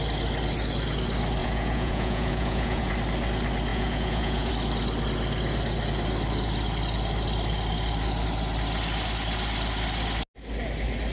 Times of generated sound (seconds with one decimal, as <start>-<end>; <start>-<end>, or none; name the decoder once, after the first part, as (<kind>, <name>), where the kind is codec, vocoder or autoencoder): 1.4-2.9 (vocoder, Vocos); 3.7-4.5